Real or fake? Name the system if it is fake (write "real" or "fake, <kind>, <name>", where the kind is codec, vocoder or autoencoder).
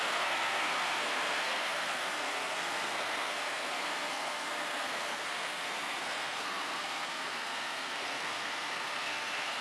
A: fake, codec, SNAC